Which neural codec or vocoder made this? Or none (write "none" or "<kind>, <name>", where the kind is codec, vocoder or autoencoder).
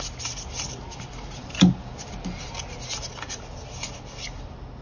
none